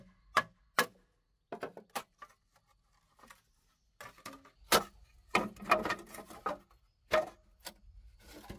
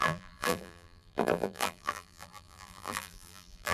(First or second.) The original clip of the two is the first